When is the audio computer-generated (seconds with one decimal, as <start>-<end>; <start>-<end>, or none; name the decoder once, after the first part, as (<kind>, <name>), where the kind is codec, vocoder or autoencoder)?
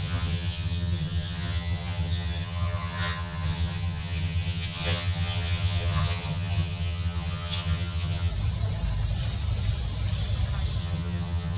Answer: 0.0-8.3 (vocoder, HiFi-GAN); 10.8-11.6